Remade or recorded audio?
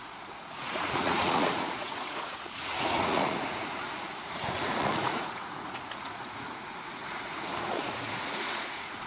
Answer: remade